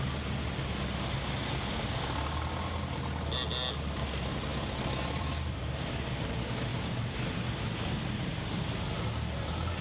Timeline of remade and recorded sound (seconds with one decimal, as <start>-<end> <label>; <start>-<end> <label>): 0.0-4.5 recorded; 4.5-5.9 remade; 5.9-6.7 recorded; 6.7-7.4 remade; 7.4-9.8 recorded